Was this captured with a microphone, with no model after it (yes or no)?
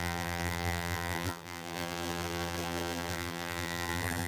no